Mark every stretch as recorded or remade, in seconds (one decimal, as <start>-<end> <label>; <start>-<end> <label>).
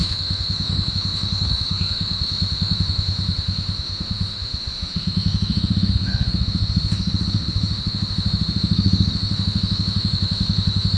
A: 0.0-11.0 remade